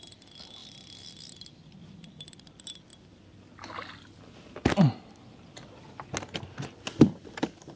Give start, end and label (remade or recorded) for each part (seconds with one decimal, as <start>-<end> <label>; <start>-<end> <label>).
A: 0.0-0.6 recorded; 0.6-1.5 remade; 1.5-7.8 recorded